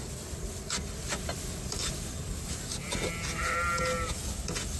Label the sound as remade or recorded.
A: recorded